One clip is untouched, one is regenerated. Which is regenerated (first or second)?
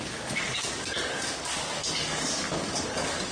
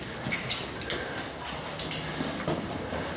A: first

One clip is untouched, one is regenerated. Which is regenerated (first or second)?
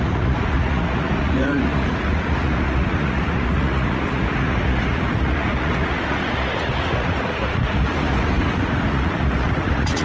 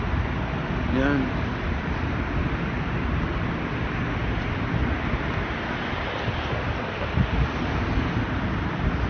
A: first